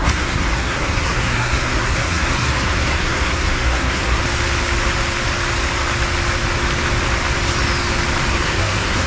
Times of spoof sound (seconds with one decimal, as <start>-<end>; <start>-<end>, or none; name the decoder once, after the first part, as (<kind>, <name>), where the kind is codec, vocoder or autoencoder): 0.0-4.2 (codec, SNAC); 8.3-9.1